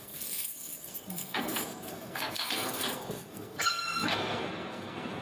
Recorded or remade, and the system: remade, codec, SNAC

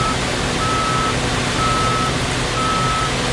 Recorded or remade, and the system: recorded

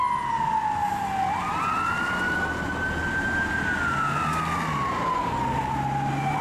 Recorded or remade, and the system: recorded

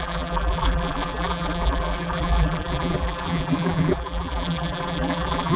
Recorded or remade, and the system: remade, vocoder, BigVGAN v2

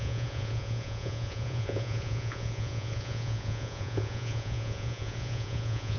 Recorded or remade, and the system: remade, vocoder, Vocos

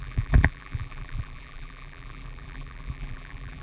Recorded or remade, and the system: remade, vocoder, BigVGAN v2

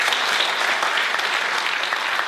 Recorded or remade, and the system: recorded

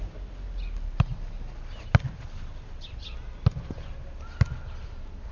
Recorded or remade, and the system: recorded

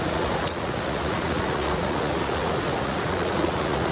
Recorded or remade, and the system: remade, vocoder, Vocos